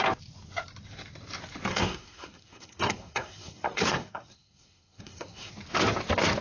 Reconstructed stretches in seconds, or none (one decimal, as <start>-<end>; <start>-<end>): 1.7-5.5